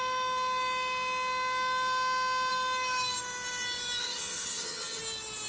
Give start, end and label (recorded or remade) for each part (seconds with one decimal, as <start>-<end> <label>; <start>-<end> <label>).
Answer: 0.0-4.0 recorded; 4.0-5.0 remade; 5.0-5.5 recorded